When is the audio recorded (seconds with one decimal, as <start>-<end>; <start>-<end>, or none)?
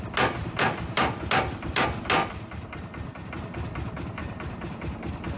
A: 0.0-0.4; 1.0-2.2; 3.3-4.2; 4.8-5.4